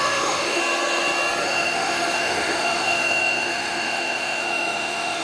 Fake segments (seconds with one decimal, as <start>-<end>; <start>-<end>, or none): 0.0-0.6; 1.4-5.2